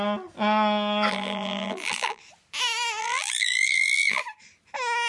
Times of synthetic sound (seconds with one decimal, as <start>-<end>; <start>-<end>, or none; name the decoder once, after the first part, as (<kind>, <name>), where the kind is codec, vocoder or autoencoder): 1.1-2.2 (vocoder, BigVGAN v2); 3.0-4.2